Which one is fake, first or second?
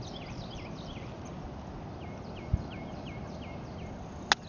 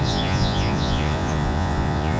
second